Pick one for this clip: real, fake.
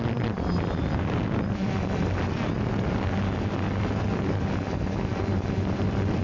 real